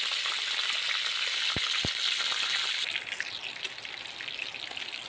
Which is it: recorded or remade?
recorded